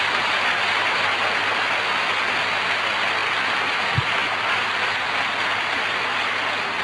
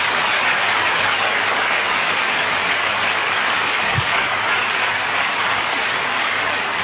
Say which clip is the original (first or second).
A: first